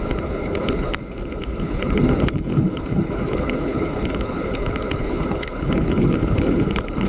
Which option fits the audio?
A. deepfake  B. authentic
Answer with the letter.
A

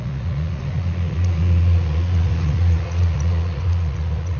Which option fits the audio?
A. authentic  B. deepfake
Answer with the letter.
B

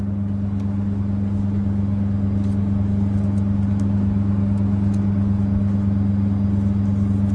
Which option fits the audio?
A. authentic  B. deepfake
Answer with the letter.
A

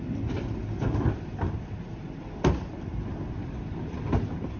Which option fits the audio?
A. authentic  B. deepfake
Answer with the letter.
A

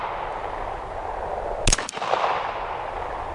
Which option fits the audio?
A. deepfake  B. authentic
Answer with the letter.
B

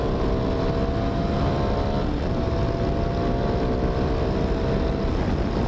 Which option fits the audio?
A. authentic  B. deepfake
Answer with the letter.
A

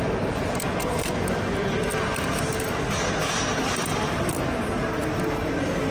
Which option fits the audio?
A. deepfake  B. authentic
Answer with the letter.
B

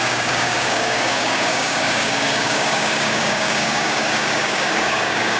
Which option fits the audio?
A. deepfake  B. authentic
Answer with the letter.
A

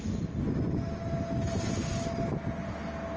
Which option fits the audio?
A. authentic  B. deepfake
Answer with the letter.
A